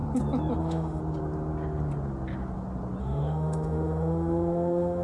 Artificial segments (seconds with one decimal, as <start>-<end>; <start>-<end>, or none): 0.6-1.0; 3.0-5.0